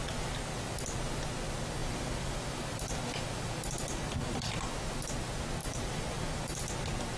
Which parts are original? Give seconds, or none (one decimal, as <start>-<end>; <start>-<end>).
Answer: 0.0-1.8; 4.6-5.6; 6.6-7.2